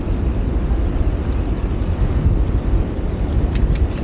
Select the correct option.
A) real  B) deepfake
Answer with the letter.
A